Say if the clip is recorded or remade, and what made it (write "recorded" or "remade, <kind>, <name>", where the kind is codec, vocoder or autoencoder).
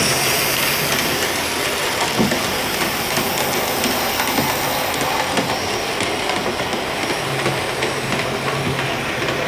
recorded